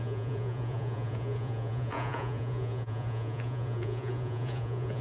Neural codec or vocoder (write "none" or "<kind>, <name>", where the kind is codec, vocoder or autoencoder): vocoder, Vocos